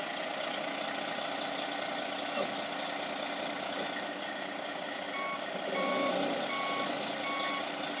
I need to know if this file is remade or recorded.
recorded